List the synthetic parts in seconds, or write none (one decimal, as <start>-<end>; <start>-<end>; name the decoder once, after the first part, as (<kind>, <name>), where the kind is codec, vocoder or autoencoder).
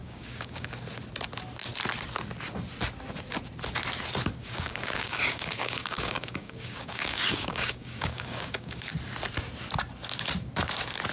0.0-0.7 (codec, DAC); 4.4-8.9